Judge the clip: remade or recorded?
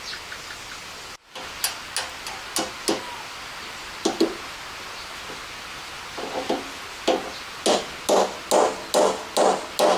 recorded